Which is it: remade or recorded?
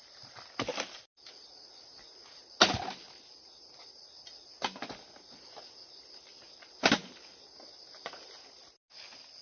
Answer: recorded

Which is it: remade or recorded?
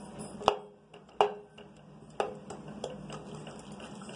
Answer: recorded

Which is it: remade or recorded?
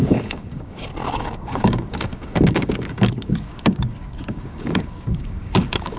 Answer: remade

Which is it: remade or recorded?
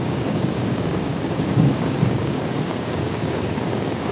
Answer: remade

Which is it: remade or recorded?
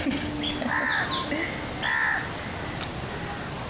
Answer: recorded